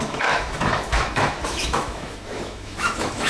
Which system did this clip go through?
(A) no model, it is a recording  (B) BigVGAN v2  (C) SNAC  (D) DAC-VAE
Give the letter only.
D